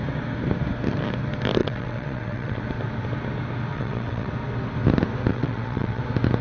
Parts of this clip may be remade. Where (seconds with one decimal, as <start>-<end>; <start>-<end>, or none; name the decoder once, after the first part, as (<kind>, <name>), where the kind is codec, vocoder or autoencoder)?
1.6-2.6 (vocoder, WaveNeXt); 3.7-4.3; 5.3-6.0